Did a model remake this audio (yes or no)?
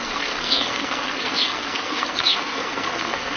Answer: yes